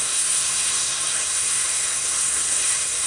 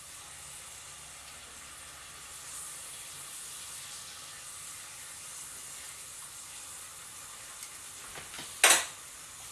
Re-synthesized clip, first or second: first